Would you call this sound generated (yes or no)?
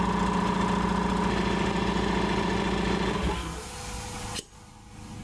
no